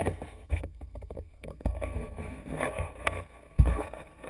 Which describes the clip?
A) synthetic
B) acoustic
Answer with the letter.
A